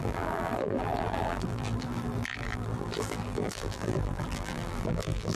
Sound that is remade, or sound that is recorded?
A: remade